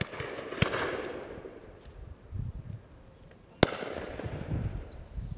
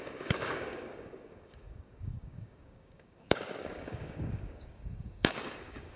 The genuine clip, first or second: first